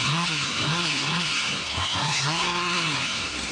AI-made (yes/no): yes